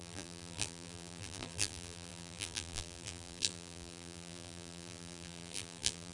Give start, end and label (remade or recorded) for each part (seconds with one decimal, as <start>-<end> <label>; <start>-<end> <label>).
0.0-6.1 remade